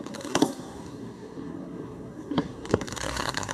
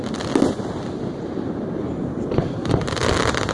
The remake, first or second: first